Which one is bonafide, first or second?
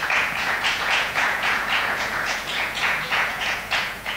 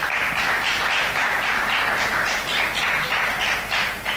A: second